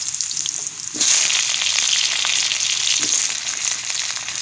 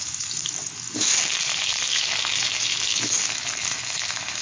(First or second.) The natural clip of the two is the first